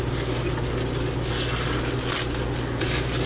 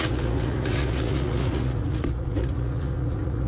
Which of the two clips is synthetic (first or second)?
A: second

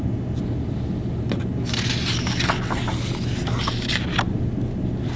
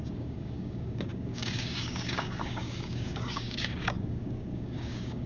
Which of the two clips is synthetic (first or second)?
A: second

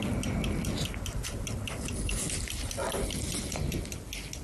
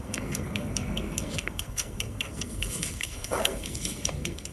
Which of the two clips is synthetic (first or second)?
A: second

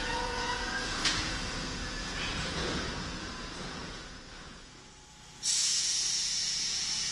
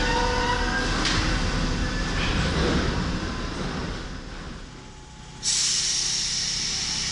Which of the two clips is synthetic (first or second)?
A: first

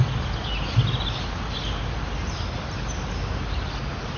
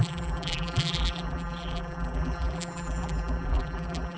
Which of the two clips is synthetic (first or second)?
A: second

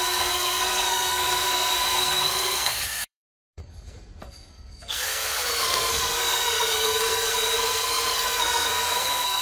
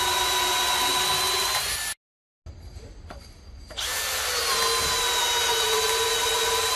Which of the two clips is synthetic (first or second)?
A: first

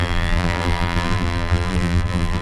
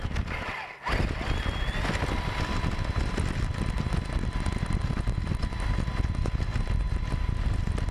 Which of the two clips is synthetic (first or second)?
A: first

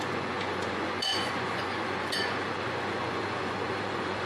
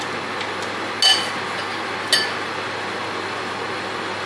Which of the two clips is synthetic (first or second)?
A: first